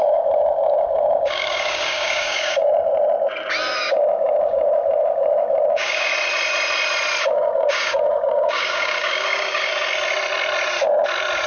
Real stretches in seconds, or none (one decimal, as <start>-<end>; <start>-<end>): 2.9-3.8; 6.1-7.2; 9.7-11.5